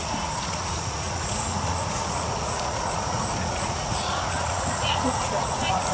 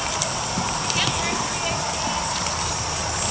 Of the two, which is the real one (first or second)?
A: second